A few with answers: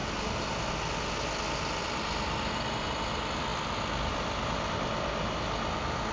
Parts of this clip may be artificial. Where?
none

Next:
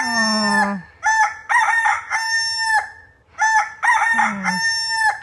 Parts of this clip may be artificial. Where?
none

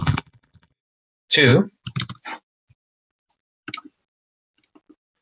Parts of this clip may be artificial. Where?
0.0-0.8 (vocoder, BigVGAN v2)

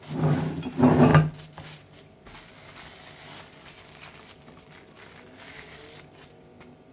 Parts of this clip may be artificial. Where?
none

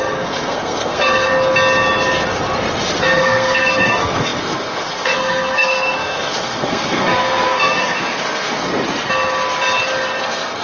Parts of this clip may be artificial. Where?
0.0-1.3 (codec, SNAC); 3.0-8.7; 10.2-10.6

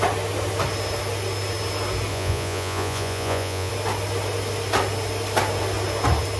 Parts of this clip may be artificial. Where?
2.1-3.7 (vocoder, Vocos)

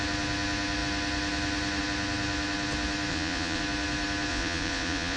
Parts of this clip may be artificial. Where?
3.1-3.6 (vocoder, Vocos); 4.3-5.2